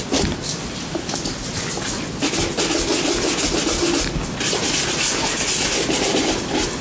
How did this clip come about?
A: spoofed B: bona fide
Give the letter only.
B